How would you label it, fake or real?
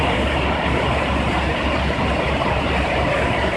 real